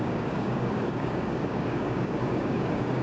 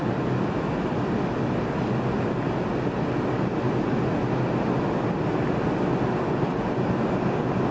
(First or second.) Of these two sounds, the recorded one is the second